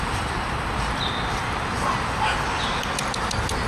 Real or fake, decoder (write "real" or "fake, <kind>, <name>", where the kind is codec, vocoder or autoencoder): real